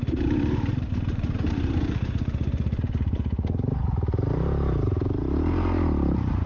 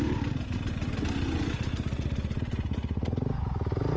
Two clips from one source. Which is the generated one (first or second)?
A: first